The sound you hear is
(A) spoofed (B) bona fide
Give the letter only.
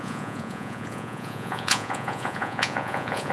A